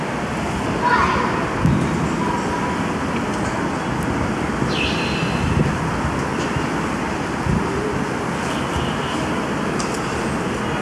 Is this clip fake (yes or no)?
no